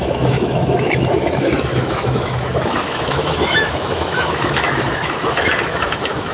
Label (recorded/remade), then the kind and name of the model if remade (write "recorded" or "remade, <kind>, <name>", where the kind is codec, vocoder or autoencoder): remade, autoencoder, DAC-VAE